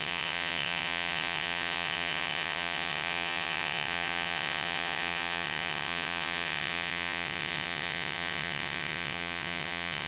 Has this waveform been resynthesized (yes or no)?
yes